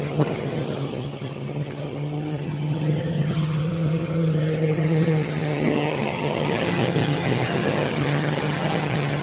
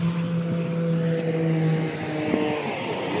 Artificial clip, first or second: first